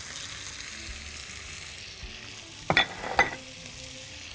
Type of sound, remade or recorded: recorded